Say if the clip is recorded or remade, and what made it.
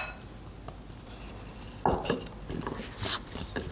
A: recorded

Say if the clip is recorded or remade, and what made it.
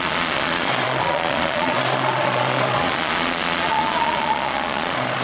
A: remade, vocoder, Vocos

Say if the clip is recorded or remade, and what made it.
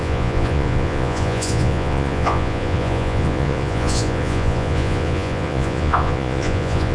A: remade, vocoder, Vocos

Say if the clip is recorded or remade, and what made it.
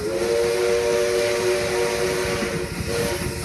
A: recorded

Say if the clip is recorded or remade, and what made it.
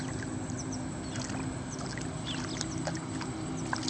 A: recorded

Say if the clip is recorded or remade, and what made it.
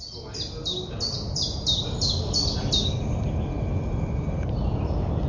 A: recorded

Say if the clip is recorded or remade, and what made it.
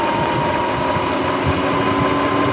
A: recorded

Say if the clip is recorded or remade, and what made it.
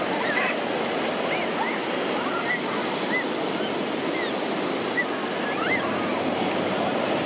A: recorded